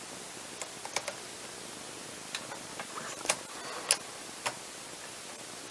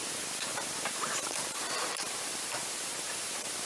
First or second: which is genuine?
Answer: first